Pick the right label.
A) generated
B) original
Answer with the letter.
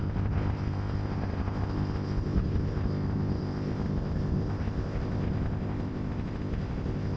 A